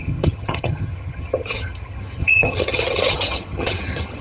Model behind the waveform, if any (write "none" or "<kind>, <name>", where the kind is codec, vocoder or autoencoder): vocoder, HiFi-GAN